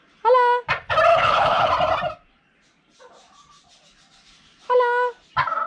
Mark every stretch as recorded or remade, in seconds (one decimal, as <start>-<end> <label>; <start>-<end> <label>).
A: 0.0-1.1 recorded; 1.1-1.7 remade; 1.7-5.7 recorded